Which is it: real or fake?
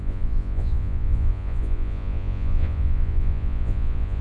fake